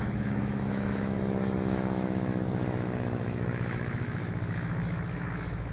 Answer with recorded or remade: remade